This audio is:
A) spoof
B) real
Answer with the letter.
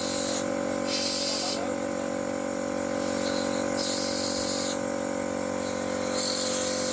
B